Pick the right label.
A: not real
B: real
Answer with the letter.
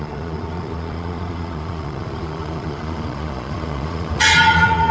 A